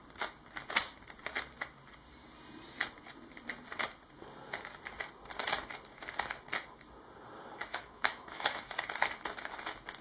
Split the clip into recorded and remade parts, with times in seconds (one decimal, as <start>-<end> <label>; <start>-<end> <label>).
0.0-7.7 recorded; 7.7-8.8 remade; 8.8-10.0 recorded